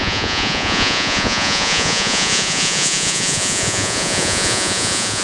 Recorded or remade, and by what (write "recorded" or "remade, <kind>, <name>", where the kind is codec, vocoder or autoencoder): remade, vocoder, Vocos